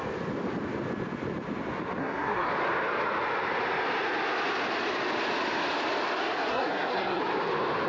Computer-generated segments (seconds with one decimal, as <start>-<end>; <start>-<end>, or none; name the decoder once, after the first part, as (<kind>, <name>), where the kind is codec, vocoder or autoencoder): 2.0-2.5 (codec, SNAC); 6.5-7.2